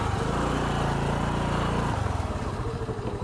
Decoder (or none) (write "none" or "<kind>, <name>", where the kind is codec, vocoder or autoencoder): none